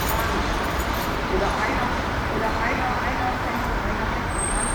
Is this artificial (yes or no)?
yes